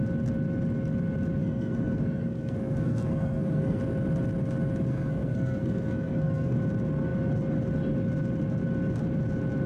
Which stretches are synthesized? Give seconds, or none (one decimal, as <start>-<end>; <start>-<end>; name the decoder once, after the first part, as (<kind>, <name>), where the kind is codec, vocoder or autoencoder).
1.4-3.8 (codec, SNAC); 4.9-6.6